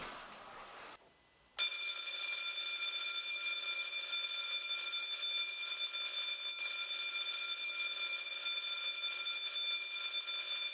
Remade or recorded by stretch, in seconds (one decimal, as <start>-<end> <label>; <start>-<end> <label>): 0.0-10.7 recorded